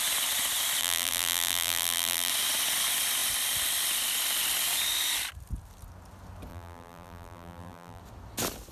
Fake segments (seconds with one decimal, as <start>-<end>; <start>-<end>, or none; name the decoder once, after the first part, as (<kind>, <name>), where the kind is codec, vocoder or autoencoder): 0.8-2.3 (vocoder, BigVGAN v2); 6.5-8.0

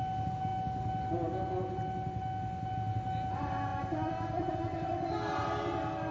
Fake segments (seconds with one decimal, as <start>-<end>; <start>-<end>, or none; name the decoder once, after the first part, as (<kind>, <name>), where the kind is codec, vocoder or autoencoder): none

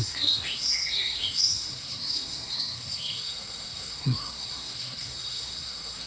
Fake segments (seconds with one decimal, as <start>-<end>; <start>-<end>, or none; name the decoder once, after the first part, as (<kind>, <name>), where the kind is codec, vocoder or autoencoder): 0.0-6.1 (codec, SNAC)

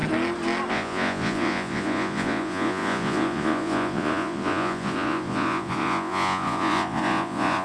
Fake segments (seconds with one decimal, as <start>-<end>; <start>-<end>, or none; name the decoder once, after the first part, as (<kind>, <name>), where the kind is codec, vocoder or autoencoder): 0.7-7.6 (vocoder, Vocos)

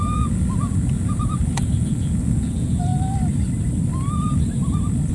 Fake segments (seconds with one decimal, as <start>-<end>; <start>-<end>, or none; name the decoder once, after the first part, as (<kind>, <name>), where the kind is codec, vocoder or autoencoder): 0.0-2.9 (vocoder, Vocos)

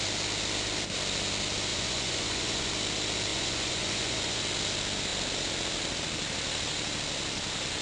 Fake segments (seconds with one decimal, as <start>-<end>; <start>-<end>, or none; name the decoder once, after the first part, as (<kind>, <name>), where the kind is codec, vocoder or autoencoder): 1.7-2.7 (vocoder, Vocos); 3.3-4.4